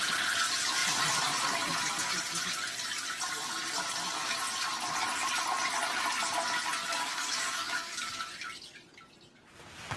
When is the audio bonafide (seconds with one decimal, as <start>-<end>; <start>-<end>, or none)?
0.0-6.9; 8.2-10.0